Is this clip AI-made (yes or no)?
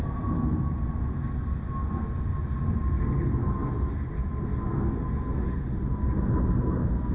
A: no